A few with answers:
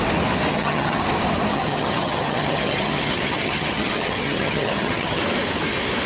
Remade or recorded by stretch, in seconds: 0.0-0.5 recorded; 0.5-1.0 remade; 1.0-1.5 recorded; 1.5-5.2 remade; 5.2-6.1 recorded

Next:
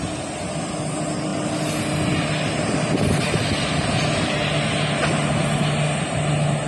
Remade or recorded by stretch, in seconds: 0.0-6.7 recorded

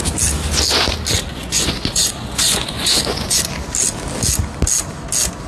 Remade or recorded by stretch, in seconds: 0.0-1.3 recorded; 1.3-3.5 remade; 3.5-5.5 recorded

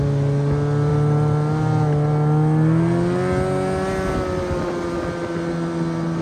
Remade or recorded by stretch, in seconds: 0.0-6.2 recorded